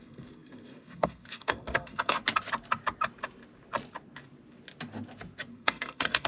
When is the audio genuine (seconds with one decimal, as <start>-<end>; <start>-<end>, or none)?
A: 2.2-5.5